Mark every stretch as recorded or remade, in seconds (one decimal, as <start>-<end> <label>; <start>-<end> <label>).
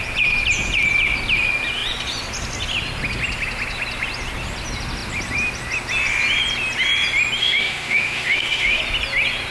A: 0.0-7.4 recorded; 7.4-8.8 remade; 8.8-9.5 recorded